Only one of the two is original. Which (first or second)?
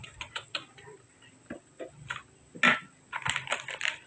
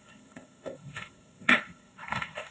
first